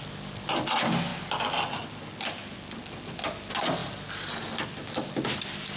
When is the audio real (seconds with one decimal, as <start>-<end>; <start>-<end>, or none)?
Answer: 0.0-5.8

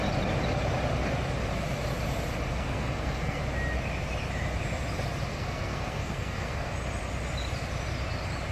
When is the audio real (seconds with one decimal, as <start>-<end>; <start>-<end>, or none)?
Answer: 0.0-2.5; 3.4-5.3; 6.7-8.5